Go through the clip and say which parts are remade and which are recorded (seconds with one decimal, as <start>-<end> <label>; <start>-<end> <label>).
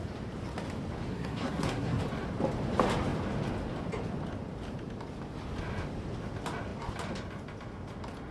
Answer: 0.0-1.1 recorded; 1.1-2.0 remade; 2.0-8.3 recorded